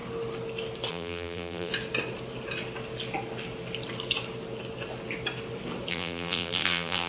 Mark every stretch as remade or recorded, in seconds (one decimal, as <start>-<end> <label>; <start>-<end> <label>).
0.0-0.9 recorded; 0.9-1.7 remade; 1.7-5.9 recorded; 5.9-7.1 remade

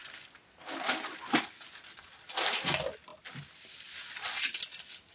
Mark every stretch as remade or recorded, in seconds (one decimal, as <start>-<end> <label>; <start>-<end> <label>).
0.0-5.1 recorded

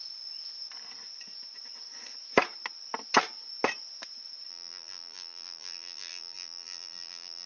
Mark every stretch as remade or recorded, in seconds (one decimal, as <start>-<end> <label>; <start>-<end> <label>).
0.0-4.5 recorded; 4.5-7.5 remade

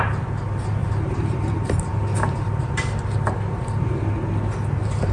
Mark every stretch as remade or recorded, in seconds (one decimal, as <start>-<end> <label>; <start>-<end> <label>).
0.0-0.8 recorded; 0.8-1.8 remade; 1.8-5.1 recorded